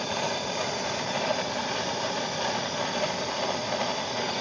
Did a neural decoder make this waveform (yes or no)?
no